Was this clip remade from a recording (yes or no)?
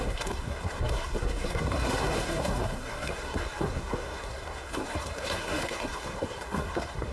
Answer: yes